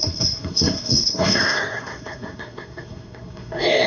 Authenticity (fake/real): fake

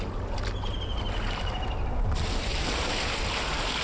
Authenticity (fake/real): real